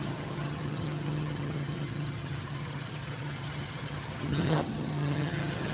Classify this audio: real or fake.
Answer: fake